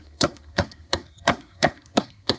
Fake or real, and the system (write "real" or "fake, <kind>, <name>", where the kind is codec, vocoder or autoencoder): fake, codec, SNAC